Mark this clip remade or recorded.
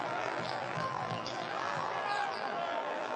remade